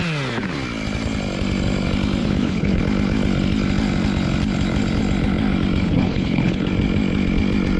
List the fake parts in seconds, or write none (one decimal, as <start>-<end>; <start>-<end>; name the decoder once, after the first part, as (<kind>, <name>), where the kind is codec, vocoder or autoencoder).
2.2-2.8 (codec, HILCodec); 5.8-6.7